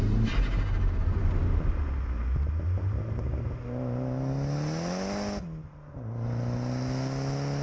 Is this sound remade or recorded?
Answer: recorded